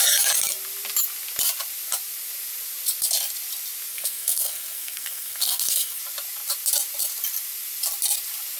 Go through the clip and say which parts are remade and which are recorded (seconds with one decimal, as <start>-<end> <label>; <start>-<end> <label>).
0.0-3.9 recorded; 3.9-6.0 remade; 6.0-8.6 recorded